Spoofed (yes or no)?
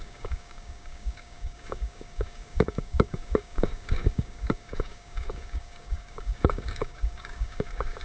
yes